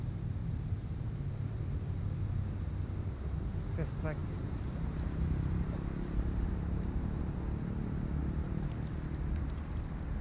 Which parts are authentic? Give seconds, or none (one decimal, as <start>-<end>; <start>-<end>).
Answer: 0.0-0.4; 1.6-4.2; 7.2-8.2; 8.7-10.2